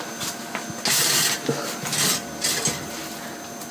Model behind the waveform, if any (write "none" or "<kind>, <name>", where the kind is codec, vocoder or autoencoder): none